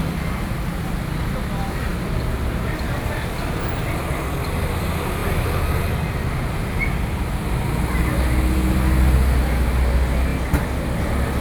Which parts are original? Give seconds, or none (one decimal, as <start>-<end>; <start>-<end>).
0.0-11.4